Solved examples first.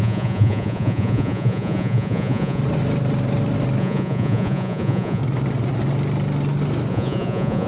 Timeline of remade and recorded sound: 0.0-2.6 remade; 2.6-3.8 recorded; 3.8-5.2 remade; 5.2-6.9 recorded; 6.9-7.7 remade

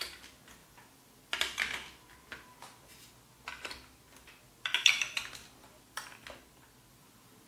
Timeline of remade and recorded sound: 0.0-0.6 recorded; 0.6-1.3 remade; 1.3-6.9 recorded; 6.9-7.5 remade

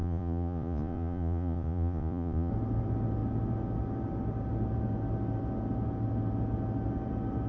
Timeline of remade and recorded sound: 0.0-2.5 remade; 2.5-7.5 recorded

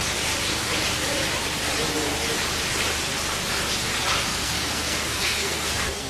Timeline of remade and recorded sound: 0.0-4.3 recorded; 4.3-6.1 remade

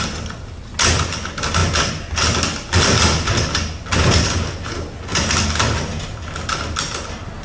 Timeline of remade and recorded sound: 0.0-7.4 recorded

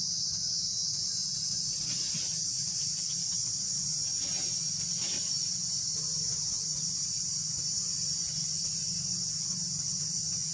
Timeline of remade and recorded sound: 0.0-1.2 recorded; 1.2-2.1 remade; 2.1-3.4 recorded; 3.4-3.9 remade; 3.9-10.5 recorded

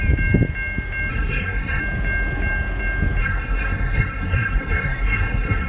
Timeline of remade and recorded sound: 0.0-1.1 recorded; 1.1-1.8 remade; 1.8-3.2 recorded; 3.2-5.7 remade